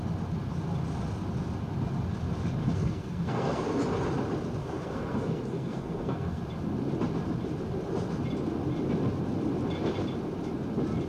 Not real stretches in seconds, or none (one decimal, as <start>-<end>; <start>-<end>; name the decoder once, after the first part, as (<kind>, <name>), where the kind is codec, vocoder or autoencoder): 2.6-3.6 (codec, SNAC); 4.6-6.4

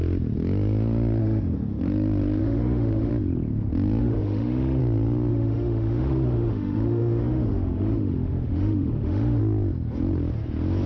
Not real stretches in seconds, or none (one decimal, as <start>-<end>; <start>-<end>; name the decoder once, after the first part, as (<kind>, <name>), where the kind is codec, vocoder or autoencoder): 1.2-1.8 (autoencoder, DAC-VAE); 2.4-3.1; 4.0-4.8; 5.3-9.4